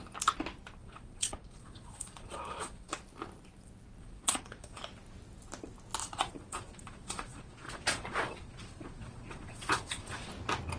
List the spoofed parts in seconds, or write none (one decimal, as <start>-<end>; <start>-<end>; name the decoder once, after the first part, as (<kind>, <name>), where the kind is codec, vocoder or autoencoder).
0.8-2.9 (vocoder, Vocos); 4.0-4.8; 6.0-10.3